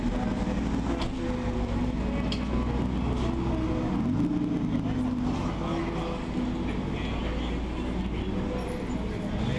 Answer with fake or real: real